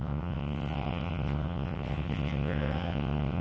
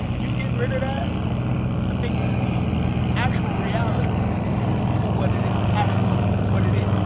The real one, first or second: second